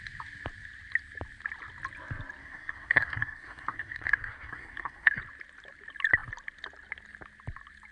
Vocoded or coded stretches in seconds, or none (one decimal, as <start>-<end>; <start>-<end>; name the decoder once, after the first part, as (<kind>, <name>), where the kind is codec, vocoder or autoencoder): 2.4-5.2 (codec, SNAC)